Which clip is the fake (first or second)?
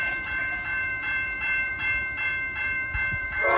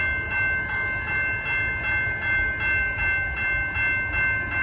first